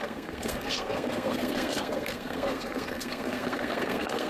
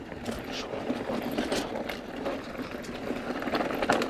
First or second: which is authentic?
second